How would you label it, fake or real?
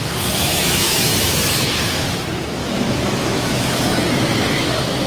fake